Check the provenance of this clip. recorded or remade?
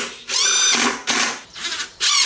remade